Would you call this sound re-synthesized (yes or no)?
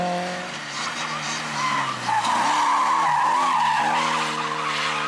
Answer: no